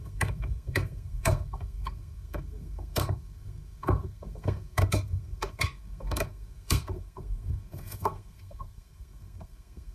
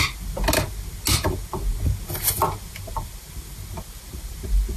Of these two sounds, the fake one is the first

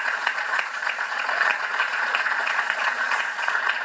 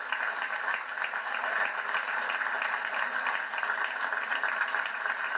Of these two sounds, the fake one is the first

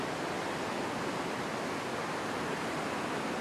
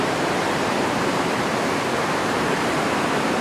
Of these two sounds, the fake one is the second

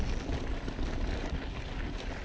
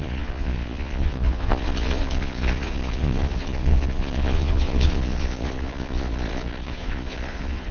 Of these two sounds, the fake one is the second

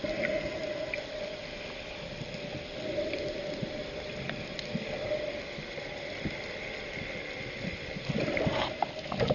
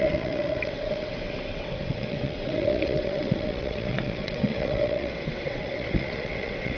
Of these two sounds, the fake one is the second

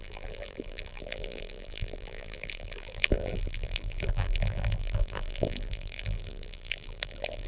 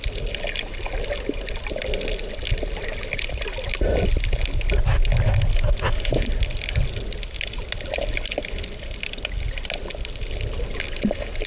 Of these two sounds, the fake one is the first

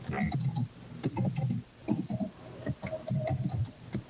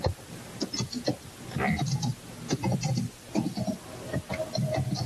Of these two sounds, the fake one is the first